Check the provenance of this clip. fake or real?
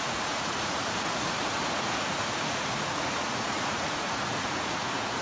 fake